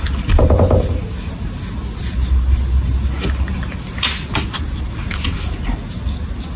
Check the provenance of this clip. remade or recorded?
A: recorded